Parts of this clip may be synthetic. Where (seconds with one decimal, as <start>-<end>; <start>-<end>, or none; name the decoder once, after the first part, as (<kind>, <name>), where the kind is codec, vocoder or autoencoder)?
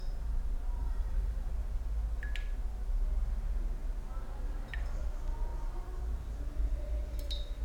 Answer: 0.8-1.5 (vocoder, BigVGAN v2)